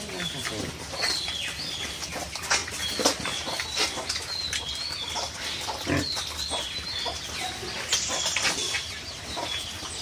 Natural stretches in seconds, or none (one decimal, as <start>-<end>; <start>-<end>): 0.0-10.0